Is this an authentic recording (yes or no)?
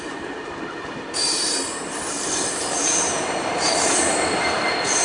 no